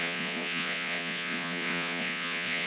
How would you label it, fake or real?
fake